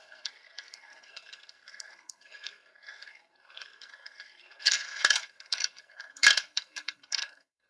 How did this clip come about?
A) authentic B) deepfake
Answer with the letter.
B